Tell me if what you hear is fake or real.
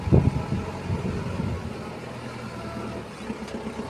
real